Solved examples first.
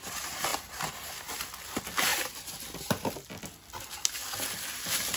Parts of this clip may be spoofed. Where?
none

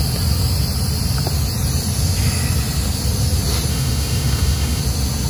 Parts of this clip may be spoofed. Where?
3.7-4.8